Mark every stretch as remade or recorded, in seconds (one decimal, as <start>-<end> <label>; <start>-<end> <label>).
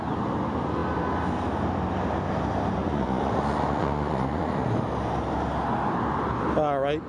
0.0-2.8 recorded; 2.8-4.8 remade; 4.8-7.1 recorded